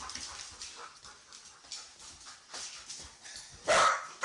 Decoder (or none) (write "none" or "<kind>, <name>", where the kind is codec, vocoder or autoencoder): none